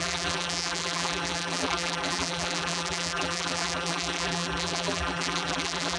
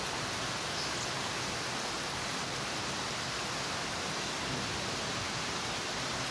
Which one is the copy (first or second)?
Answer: first